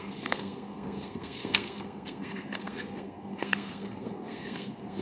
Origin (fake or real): fake